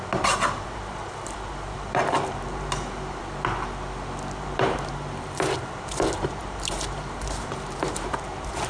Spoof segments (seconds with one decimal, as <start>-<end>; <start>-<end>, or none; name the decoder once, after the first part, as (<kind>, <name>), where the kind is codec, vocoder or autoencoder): 0.0-3.2 (vocoder, BigVGAN v2); 4.4-8.7